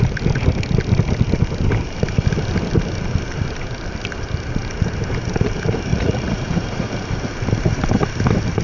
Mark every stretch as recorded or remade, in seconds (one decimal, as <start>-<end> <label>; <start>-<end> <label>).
0.0-5.9 recorded; 5.9-6.9 remade; 6.9-8.6 recorded